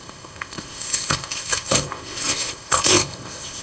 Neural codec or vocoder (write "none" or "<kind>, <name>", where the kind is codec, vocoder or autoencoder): codec, ZipCodec